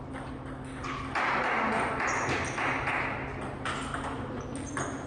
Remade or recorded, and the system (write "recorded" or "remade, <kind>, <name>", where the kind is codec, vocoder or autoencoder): recorded